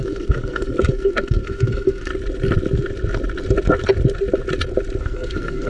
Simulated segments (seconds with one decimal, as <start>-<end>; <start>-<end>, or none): 0.0-2.1; 5.0-5.7